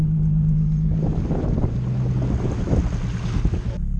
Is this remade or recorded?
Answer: recorded